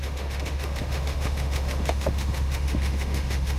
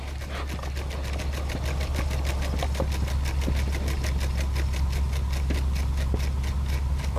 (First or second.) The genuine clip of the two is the second